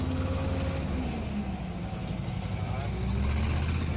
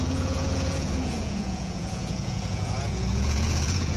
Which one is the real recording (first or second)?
first